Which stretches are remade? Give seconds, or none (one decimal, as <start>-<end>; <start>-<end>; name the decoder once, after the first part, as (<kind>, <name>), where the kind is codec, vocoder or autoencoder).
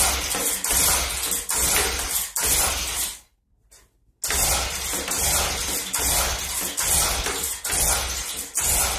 none